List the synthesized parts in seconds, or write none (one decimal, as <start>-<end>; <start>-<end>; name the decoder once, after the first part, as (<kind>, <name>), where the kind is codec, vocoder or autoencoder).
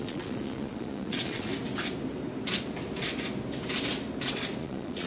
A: 0.0-1.5 (vocoder, Vocos); 4.6-5.1